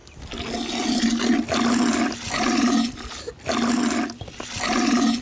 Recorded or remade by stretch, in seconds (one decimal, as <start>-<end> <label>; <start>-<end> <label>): 0.0-5.2 recorded